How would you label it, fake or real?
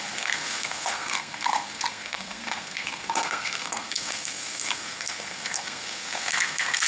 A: fake